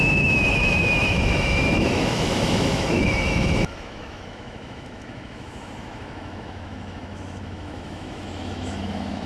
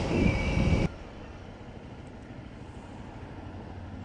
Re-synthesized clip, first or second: first